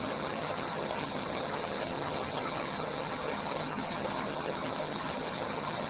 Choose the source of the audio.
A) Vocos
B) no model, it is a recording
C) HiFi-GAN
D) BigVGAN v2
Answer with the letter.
C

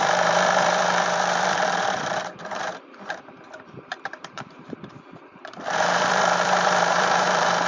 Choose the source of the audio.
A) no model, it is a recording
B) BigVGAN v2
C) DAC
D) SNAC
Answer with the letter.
B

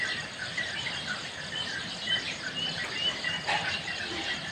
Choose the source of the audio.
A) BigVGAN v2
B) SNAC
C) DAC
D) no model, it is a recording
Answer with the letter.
D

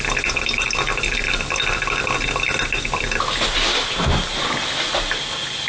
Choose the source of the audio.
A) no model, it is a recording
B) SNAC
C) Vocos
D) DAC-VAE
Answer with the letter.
A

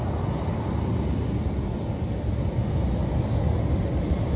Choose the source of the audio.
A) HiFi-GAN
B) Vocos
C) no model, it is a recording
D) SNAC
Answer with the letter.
C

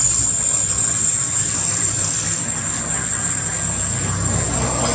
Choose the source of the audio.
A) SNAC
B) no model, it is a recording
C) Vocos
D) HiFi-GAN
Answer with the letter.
B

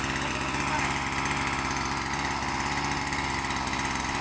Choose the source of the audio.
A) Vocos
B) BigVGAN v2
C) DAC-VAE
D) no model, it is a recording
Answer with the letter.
D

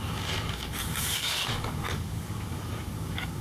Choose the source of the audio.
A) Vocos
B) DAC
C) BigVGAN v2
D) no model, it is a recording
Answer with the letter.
B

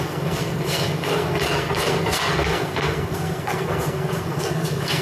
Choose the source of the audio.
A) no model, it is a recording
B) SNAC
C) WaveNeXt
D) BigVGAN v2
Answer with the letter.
B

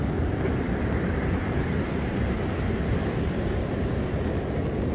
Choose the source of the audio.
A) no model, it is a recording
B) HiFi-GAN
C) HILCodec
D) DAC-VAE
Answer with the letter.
A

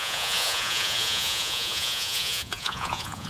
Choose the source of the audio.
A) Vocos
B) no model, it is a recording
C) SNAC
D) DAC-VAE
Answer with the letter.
A